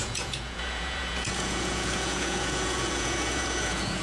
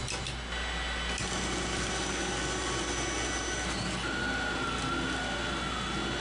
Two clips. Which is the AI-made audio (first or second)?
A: first